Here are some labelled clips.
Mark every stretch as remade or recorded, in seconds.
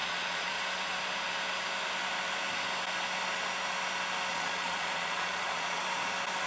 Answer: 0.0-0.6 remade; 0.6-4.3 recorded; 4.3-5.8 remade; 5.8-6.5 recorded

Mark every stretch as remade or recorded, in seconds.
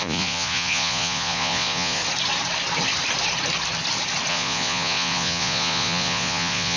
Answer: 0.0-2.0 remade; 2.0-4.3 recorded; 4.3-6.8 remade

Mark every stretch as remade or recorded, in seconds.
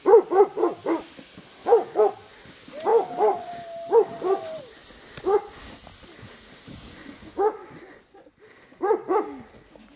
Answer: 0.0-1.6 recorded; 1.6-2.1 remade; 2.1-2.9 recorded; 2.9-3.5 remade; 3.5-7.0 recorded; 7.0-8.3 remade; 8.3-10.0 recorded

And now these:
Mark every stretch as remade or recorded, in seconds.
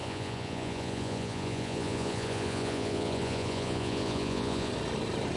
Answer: 0.0-4.7 remade; 4.7-5.4 recorded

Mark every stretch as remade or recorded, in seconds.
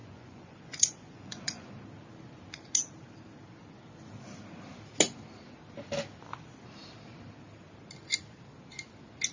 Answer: 0.0-1.7 remade; 1.7-9.3 recorded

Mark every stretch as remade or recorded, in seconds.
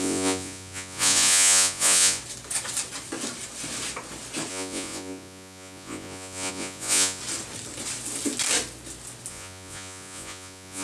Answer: 0.0-2.2 remade; 2.2-4.5 recorded; 4.5-7.2 remade; 7.2-9.3 recorded; 9.3-10.8 remade